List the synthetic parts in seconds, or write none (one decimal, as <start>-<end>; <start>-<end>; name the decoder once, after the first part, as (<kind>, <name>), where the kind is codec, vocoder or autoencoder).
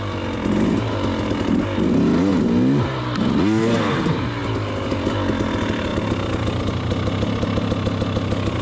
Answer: none